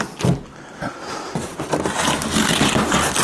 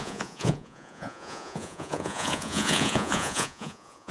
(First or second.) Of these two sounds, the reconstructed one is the second